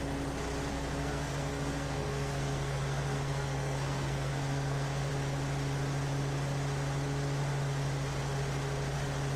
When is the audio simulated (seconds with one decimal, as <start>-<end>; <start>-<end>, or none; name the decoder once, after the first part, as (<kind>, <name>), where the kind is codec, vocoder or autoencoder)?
0.7-5.1 (codec, SNAC)